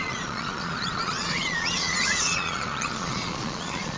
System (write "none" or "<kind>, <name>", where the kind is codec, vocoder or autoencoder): vocoder, Vocos